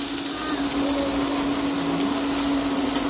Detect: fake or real real